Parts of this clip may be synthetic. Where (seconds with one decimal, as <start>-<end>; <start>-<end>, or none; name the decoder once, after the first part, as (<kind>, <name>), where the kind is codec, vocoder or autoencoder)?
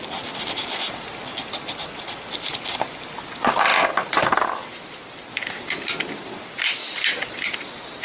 none